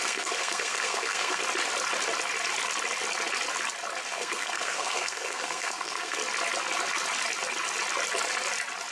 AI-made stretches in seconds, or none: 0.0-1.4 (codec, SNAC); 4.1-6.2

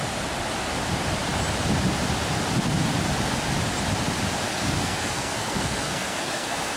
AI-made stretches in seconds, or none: 4.5-6.8 (codec, SNAC)

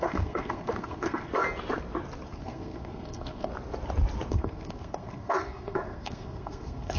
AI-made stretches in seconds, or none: 0.0-1.3 (codec, SNAC); 2.3-3.5; 4.3-7.0

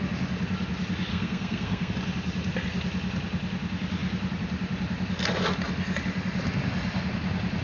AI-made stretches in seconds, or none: 1.1-1.9 (codec, SNAC)

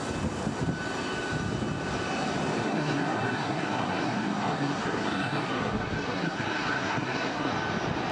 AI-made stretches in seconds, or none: 2.6-7.5 (codec, SNAC)

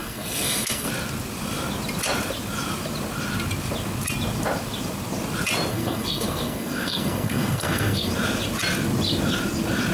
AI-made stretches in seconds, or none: 0.0-0.9 (codec, SNAC); 5.7-8.1

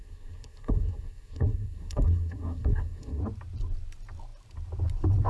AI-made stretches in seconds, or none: 0.0-3.2 (codec, SNAC)